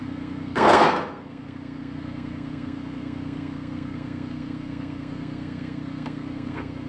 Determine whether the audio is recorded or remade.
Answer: remade